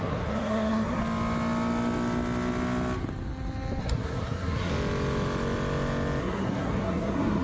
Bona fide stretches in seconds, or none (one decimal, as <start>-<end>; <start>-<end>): 1.0-3.8; 4.7-6.2